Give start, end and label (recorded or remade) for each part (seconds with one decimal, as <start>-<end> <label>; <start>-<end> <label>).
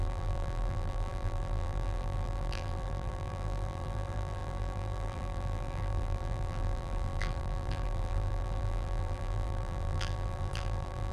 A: 0.0-11.1 remade